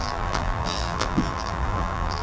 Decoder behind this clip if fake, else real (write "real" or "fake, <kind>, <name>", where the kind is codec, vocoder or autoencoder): fake, vocoder, BigVGAN v2